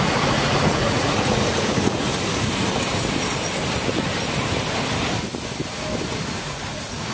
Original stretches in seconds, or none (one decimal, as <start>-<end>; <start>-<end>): 2.1-6.4

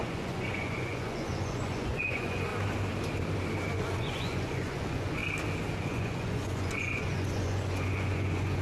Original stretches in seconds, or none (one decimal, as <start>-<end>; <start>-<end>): 2.5-3.7; 5.2-5.8

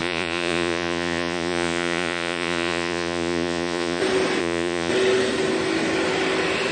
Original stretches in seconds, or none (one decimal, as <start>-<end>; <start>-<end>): 4.0-4.4; 4.9-6.7

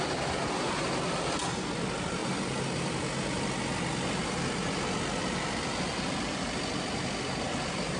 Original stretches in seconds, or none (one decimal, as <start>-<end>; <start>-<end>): 0.0-8.0

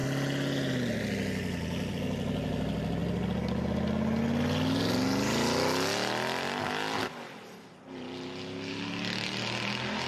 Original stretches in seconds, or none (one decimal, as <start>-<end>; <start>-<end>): 0.0-10.1

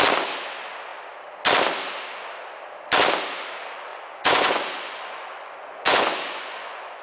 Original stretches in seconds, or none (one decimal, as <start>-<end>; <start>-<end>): 0.0-3.9